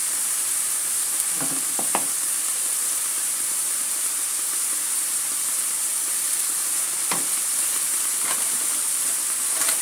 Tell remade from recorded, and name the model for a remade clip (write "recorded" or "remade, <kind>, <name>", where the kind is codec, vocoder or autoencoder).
remade, vocoder, BigVGAN v2